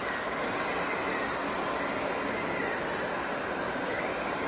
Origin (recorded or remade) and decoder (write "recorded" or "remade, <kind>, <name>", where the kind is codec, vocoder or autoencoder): recorded